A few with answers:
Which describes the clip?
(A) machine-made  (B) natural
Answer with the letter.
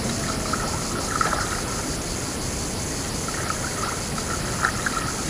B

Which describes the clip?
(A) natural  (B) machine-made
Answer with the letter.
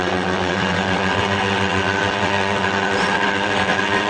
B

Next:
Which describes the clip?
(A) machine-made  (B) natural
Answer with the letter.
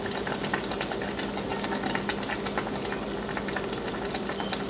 B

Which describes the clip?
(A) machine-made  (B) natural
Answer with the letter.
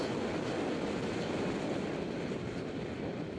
B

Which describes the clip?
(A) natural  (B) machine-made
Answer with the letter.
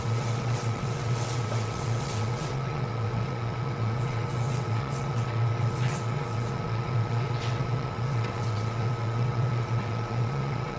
B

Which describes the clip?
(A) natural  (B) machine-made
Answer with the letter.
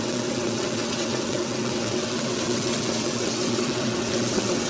B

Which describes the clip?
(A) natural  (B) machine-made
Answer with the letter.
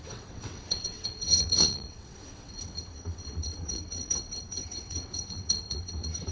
B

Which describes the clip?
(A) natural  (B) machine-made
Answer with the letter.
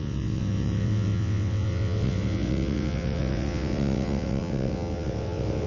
B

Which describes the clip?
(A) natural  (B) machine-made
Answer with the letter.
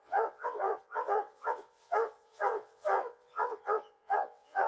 B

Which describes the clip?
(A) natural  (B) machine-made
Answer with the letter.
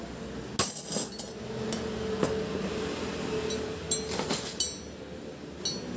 A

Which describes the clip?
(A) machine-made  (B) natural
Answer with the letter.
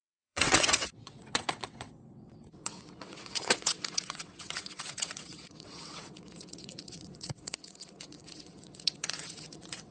A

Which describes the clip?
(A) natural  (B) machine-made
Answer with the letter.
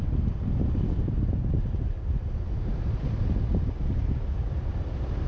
A